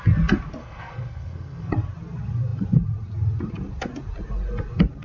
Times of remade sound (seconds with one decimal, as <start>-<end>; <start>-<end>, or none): 0.6-1.7